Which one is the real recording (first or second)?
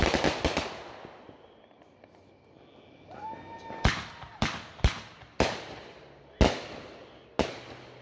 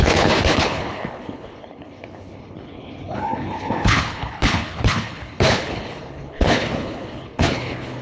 first